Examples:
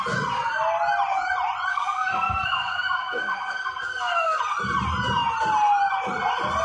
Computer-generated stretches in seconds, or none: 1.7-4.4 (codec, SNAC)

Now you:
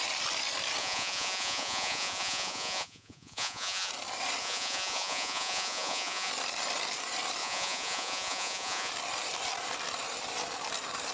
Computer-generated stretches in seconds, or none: 0.8-3.9 (vocoder, Vocos); 4.4-6.3; 7.4-8.9